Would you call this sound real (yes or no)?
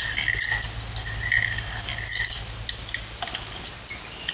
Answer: yes